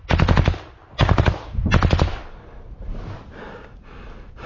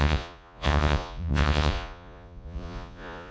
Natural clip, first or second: first